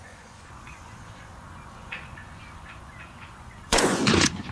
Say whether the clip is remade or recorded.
remade